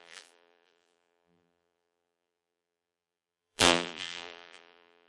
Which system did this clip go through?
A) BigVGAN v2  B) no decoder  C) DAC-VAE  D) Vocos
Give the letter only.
A